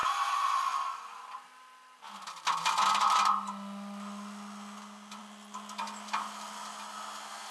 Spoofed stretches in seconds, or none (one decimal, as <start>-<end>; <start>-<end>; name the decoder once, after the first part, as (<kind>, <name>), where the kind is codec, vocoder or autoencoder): none